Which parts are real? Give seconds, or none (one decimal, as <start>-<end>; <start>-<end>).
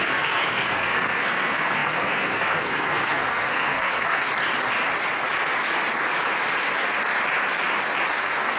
4.3-8.2